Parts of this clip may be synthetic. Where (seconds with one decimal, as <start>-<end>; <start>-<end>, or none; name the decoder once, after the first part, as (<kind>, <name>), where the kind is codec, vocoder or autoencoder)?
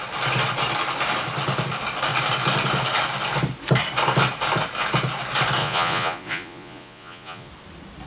5.6-7.5 (vocoder, Vocos)